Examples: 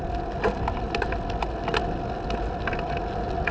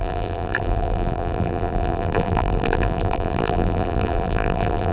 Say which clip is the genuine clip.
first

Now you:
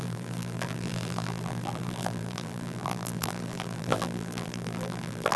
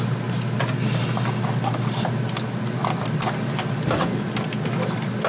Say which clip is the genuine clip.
second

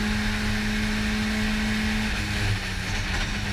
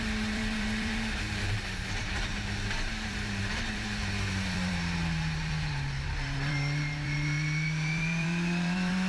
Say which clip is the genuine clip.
first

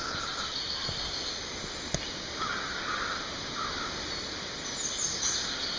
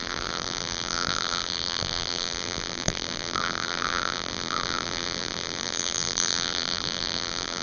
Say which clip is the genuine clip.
first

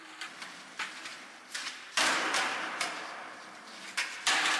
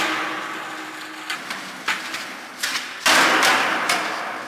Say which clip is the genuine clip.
second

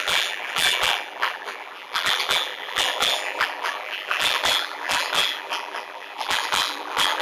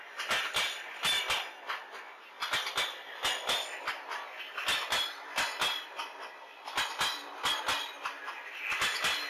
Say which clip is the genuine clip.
second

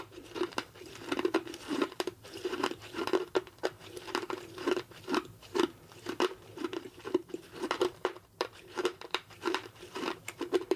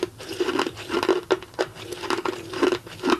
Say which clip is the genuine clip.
second